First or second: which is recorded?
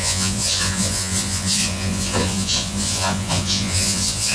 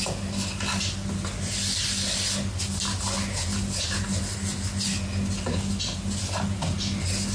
second